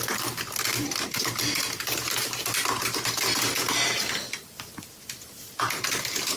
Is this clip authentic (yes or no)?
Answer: yes